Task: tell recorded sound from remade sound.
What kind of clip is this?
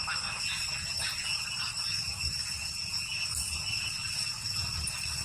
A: recorded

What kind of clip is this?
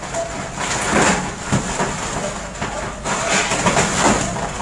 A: recorded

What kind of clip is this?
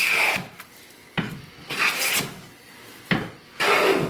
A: recorded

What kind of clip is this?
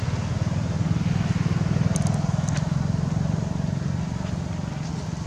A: recorded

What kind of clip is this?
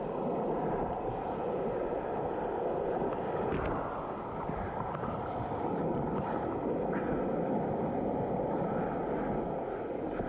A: recorded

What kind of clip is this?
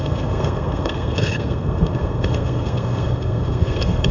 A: remade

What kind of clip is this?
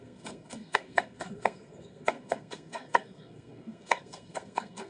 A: remade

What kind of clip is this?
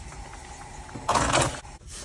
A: recorded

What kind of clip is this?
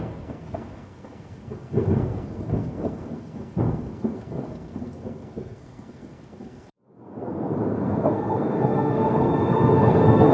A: remade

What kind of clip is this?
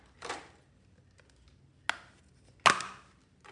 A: recorded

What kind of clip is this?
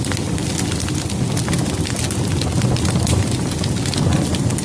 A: recorded